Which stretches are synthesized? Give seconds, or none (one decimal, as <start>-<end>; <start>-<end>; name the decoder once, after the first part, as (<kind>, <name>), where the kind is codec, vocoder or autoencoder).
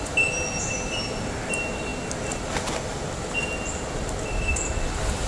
none